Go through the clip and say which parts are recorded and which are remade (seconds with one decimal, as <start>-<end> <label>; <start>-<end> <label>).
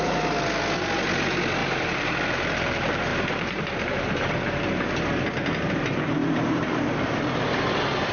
0.0-1.6 recorded; 1.6-2.2 remade; 2.2-3.1 recorded; 3.1-4.6 remade; 4.6-6.2 recorded; 6.2-7.2 remade; 7.2-8.1 recorded